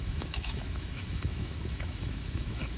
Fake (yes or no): yes